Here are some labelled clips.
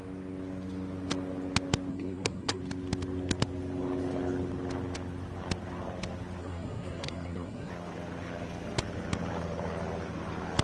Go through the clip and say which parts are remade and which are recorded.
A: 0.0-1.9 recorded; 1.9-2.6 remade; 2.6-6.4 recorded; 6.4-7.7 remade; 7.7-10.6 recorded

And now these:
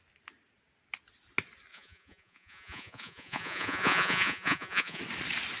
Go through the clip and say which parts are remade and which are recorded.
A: 0.0-1.7 recorded; 1.7-5.0 remade; 5.0-5.6 recorded

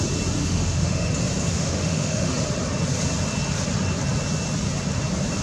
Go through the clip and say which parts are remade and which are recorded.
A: 0.0-0.4 recorded; 0.4-1.1 remade; 1.1-1.5 recorded; 1.5-2.3 remade; 2.3-5.4 recorded

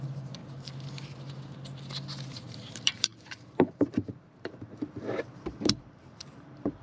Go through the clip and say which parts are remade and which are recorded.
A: 0.0-0.4 remade; 0.4-2.3 recorded; 2.3-6.8 remade

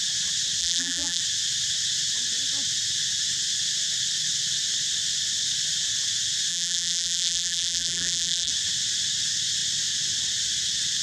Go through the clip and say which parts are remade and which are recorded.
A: 0.0-0.6 recorded; 0.6-1.2 remade; 1.2-6.5 recorded; 6.5-8.5 remade; 8.5-11.0 recorded